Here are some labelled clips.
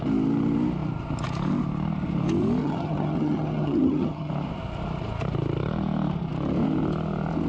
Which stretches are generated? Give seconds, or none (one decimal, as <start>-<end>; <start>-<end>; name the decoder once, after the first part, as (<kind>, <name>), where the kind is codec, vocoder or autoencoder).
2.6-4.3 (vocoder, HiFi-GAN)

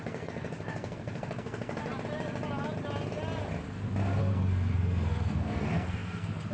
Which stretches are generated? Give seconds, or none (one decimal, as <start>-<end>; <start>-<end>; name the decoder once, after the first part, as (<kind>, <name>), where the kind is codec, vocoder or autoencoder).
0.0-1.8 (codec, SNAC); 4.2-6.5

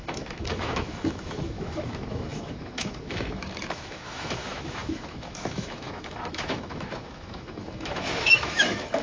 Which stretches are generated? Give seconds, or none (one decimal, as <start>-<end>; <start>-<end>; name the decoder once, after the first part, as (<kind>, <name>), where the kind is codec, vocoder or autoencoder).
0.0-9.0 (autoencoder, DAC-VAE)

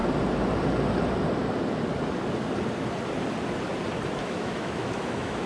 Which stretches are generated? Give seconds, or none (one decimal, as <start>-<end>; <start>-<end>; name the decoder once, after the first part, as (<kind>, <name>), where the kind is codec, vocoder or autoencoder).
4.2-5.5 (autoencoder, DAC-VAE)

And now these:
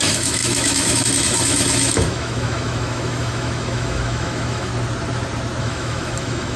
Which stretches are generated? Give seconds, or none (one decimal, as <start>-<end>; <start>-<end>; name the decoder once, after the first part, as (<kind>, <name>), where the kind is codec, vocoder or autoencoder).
0.0-4.7 (autoencoder, DAC-VAE); 5.6-6.6